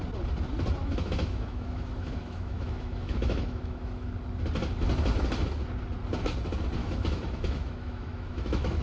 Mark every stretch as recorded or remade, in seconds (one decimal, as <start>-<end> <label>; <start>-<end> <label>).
0.0-0.8 recorded; 0.8-4.1 remade; 4.1-6.8 recorded; 6.8-8.8 remade